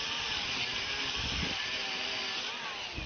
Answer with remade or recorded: recorded